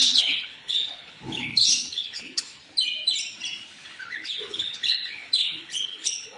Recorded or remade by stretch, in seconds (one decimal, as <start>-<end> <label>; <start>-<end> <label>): 0.0-2.6 remade; 2.6-4.0 recorded; 4.0-6.4 remade